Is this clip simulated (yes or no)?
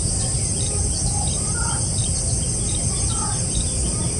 yes